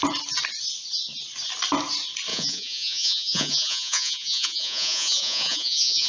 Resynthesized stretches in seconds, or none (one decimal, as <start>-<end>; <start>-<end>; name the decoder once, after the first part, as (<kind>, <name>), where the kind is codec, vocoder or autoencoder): 2.3-6.1 (vocoder, Vocos)